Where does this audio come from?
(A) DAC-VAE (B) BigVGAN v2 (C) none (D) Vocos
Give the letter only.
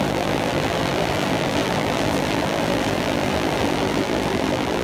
B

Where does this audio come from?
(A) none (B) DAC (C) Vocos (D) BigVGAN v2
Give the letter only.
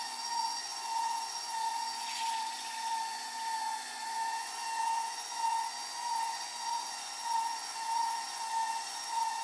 C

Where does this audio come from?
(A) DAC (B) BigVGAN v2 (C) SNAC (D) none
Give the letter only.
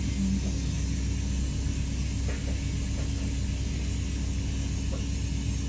D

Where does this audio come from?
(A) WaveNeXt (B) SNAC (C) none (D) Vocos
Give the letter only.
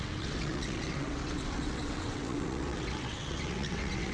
A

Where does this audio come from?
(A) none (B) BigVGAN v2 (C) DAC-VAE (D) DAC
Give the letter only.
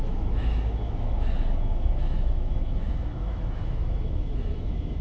C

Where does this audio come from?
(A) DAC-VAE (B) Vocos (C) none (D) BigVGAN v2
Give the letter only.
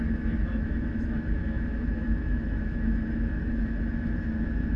A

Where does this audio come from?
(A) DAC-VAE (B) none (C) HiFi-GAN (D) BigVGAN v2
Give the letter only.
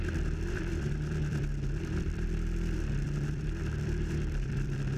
D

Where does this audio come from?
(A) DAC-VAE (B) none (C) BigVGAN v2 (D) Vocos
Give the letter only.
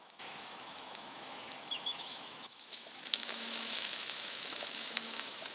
A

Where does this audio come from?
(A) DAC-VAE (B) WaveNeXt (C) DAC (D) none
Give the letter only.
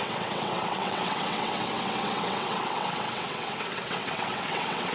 B